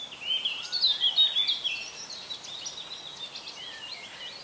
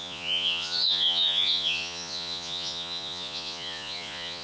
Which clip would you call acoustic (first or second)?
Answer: first